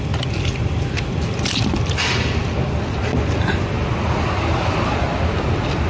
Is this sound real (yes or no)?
yes